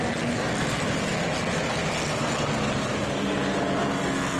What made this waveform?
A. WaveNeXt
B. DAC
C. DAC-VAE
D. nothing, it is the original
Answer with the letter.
D